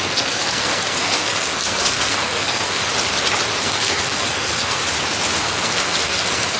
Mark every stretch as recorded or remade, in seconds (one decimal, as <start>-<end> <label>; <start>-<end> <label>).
0.0-2.8 remade; 2.8-3.6 recorded; 3.6-4.8 remade; 4.8-5.4 recorded; 5.4-6.6 remade

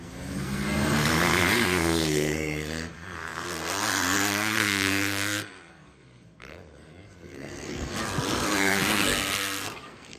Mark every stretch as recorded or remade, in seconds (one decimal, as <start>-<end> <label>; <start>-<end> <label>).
0.0-10.2 remade